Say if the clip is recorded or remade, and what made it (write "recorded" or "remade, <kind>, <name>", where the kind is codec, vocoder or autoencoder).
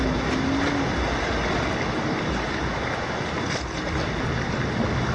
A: recorded